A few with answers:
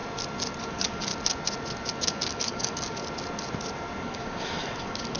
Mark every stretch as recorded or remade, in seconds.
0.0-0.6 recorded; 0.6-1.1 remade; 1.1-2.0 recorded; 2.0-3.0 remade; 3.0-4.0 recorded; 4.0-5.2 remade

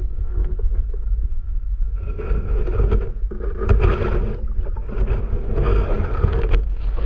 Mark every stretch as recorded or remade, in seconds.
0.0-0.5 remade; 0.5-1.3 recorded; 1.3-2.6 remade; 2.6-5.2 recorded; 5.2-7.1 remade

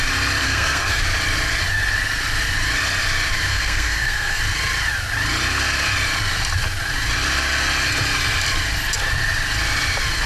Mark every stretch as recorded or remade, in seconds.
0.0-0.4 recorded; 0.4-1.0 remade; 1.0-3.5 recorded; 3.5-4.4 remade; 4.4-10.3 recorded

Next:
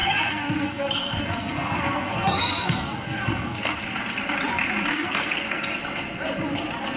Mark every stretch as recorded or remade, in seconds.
0.0-3.8 remade; 3.8-4.9 recorded; 4.9-5.8 remade; 5.8-7.0 recorded

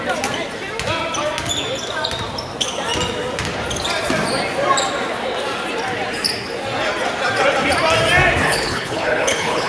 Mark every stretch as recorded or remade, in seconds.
0.0-8.5 recorded; 8.5-9.7 remade

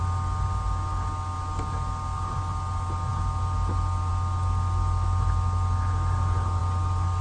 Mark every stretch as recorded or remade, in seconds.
0.0-7.2 recorded